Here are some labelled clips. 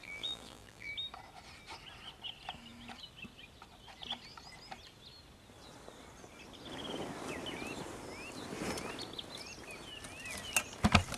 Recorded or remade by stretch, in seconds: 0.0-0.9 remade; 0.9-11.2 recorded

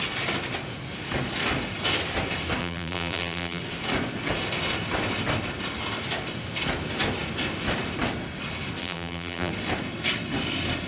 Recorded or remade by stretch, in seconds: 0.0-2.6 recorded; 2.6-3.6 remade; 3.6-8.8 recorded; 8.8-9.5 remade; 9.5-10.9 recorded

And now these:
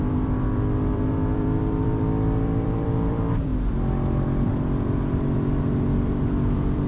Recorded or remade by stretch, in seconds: 0.0-3.5 remade; 3.5-4.5 recorded; 4.5-6.9 remade

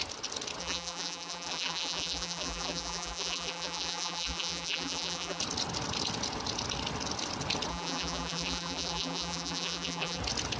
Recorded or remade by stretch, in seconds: 0.0-0.6 recorded; 0.6-5.4 remade; 5.4-7.7 recorded; 7.7-10.2 remade; 10.2-10.6 recorded

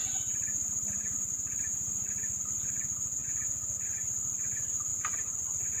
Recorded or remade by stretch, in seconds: 0.0-2.6 remade; 2.6-4.9 recorded; 4.9-5.8 remade

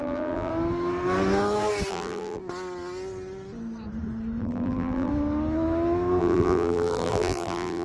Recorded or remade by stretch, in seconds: 0.0-0.5 remade; 0.5-1.9 recorded; 1.9-2.4 remade; 2.4-4.4 recorded; 4.4-5.1 remade; 5.1-6.2 recorded; 6.2-7.8 remade

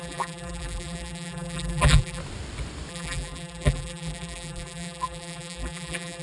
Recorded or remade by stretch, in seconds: 0.0-2.2 remade; 2.2-2.9 recorded; 2.9-6.2 remade

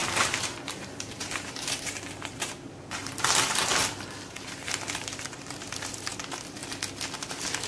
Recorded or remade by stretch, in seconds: 0.0-0.7 recorded; 0.7-6.6 remade; 6.6-7.3 recorded; 7.3-7.7 remade